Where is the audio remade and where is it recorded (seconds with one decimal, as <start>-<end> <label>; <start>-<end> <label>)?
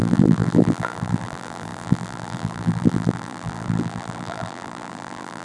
0.0-5.4 remade